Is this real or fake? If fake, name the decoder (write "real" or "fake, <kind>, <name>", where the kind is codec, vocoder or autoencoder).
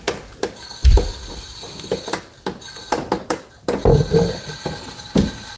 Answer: real